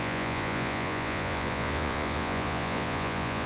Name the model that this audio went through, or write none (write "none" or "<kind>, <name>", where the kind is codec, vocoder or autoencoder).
vocoder, Vocos